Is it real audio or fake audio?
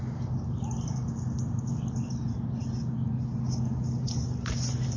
real